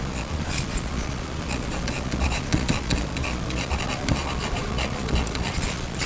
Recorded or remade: remade